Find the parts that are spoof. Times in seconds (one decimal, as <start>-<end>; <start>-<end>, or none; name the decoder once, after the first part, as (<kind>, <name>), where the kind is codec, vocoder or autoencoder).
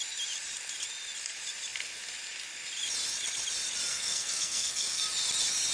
3.9-5.0 (codec, SNAC)